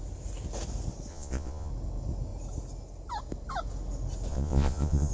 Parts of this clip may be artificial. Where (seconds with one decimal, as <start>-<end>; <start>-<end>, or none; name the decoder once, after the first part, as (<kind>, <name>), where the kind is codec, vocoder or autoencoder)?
1.1-1.7 (vocoder, Vocos); 4.3-5.1